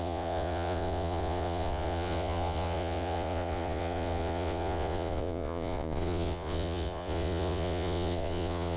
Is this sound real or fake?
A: fake